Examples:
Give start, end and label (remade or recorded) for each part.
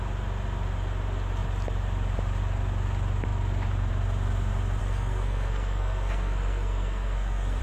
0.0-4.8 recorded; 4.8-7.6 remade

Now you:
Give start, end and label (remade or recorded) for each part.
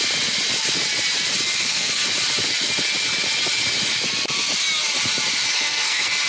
0.0-1.6 recorded; 1.6-2.0 remade; 2.0-5.5 recorded; 5.5-6.3 remade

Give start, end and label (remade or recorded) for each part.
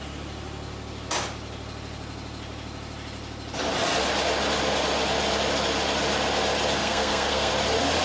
0.0-6.8 recorded; 6.8-7.5 remade; 7.5-8.0 recorded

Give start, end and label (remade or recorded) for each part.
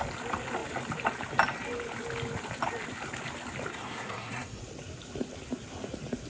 0.0-3.7 recorded; 3.7-4.6 remade; 4.6-6.3 recorded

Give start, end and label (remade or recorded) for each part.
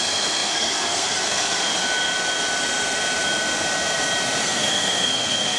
0.0-1.7 remade; 1.7-4.4 recorded; 4.4-5.6 remade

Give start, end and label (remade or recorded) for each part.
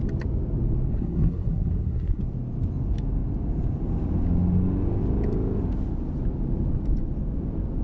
0.0-0.9 recorded; 0.9-2.2 remade; 2.2-7.8 recorded